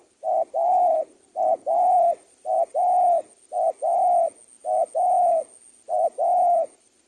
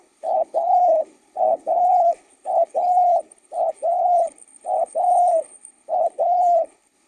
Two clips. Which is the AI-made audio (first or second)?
second